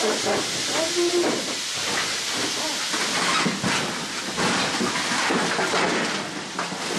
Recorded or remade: recorded